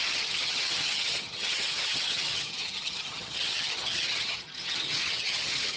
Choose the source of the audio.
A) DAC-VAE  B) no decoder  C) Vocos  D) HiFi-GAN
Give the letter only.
D